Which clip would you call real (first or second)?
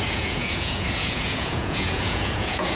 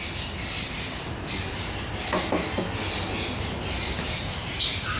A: second